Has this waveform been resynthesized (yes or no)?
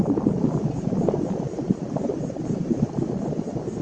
no